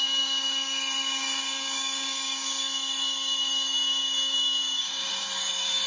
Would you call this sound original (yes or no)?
no